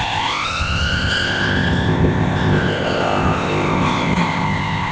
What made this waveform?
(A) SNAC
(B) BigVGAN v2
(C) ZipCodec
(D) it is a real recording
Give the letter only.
C